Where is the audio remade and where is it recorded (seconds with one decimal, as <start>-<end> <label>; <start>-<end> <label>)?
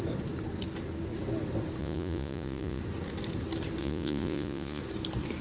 0.0-1.8 recorded; 1.8-2.8 remade; 2.8-3.8 recorded; 3.8-4.8 remade; 4.8-5.4 recorded